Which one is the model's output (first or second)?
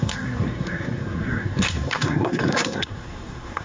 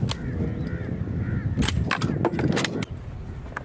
first